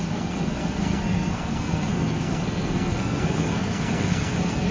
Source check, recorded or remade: remade